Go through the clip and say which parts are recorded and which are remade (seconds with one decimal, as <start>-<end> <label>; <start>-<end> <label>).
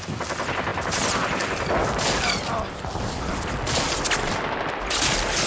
0.0-5.5 recorded